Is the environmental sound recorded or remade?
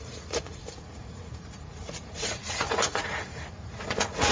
remade